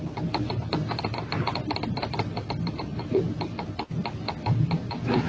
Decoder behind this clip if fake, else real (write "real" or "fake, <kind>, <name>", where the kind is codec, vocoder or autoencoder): real